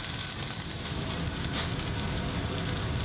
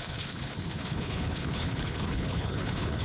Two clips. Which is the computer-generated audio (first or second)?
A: second